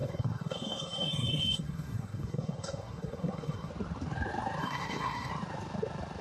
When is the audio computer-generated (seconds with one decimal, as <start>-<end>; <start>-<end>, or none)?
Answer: 0.0-3.7; 4.6-5.3